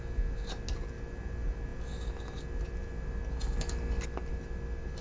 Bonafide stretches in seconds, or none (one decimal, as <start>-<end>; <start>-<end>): 0.0-5.0